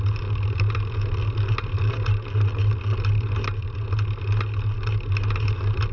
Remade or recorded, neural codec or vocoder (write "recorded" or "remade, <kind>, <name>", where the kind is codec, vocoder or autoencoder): recorded